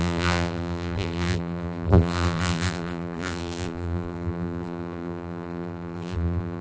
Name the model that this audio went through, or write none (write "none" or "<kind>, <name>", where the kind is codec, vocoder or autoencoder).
vocoder, BigVGAN v2